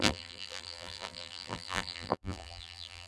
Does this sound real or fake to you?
fake